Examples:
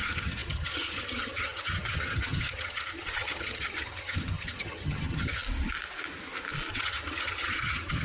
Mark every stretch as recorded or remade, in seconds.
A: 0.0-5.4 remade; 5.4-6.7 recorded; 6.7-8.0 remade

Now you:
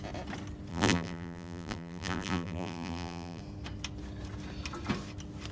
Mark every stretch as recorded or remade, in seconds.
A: 0.0-0.7 recorded; 0.7-3.4 remade; 3.4-5.5 recorded

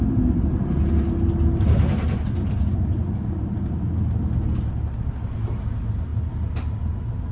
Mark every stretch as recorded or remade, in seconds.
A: 0.0-7.3 recorded

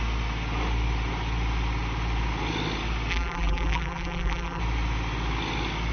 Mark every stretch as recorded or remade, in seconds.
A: 0.0-3.1 recorded; 3.1-4.6 remade; 4.6-5.9 recorded